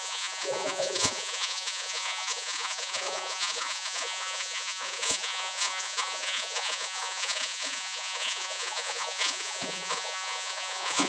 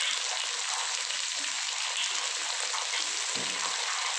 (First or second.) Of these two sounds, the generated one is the first